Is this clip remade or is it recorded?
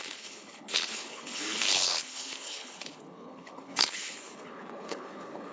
remade